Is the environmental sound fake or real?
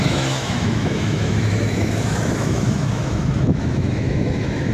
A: fake